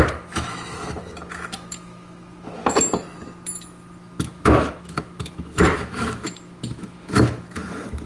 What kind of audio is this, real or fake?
fake